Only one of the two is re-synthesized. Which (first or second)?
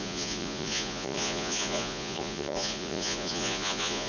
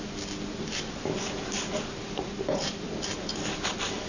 first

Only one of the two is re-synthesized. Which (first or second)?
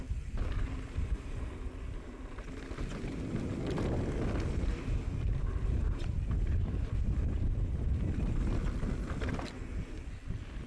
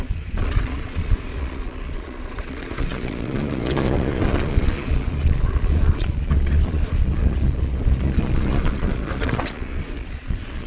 second